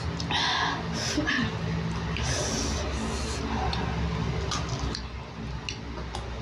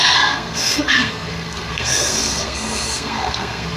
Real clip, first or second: first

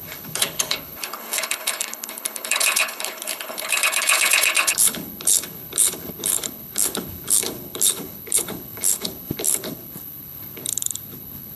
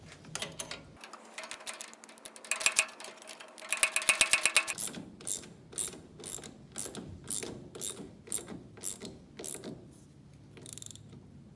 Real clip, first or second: second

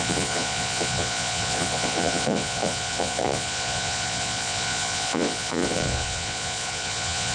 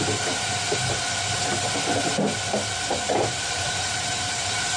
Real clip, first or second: second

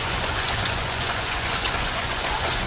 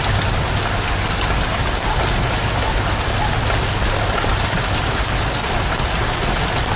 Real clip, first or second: second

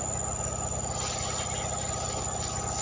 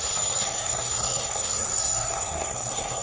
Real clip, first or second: first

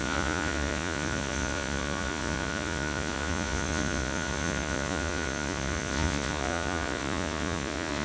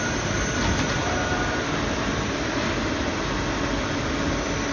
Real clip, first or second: second